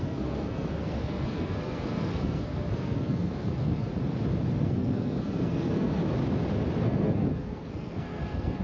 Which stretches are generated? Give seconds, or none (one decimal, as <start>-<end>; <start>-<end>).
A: 0.0-3.9; 4.6-6.0; 6.8-8.6